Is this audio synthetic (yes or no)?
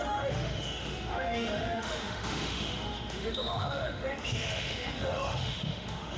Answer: yes